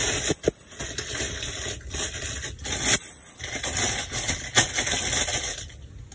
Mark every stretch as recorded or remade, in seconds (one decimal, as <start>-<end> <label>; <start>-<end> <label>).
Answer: 0.0-6.1 recorded